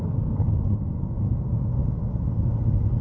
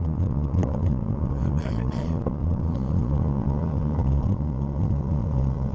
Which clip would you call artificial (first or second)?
second